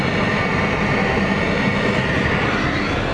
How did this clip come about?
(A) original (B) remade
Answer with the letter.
A